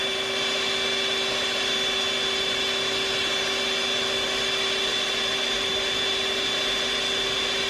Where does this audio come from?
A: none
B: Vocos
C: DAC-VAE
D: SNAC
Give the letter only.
A